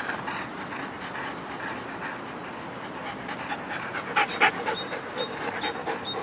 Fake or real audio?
real